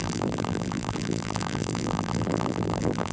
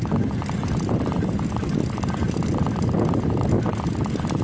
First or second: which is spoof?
first